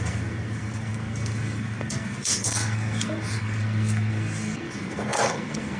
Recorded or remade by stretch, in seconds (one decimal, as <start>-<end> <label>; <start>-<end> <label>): 0.0-5.8 remade